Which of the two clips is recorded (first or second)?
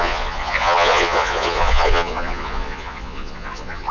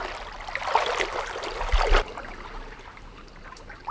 second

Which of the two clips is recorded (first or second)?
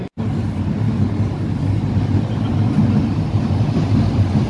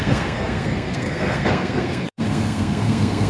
first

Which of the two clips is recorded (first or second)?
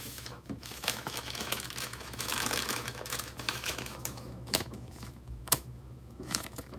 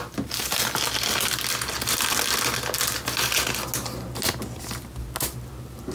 second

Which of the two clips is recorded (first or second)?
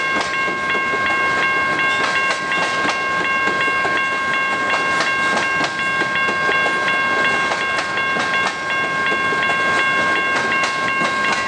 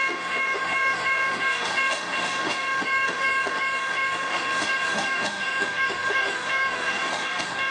first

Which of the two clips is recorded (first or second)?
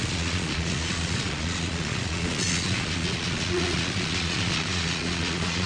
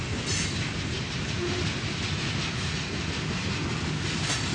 second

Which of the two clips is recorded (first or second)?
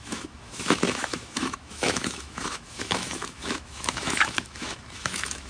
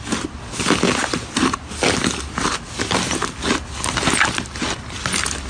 second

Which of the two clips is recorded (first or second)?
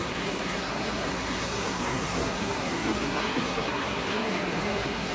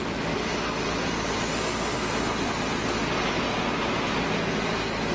second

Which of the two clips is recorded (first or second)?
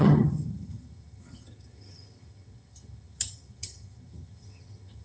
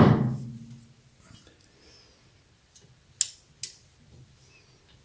second